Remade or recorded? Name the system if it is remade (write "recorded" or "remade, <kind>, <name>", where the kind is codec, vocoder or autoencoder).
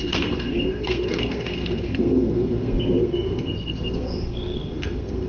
remade, codec, SNAC